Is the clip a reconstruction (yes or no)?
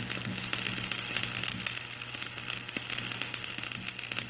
no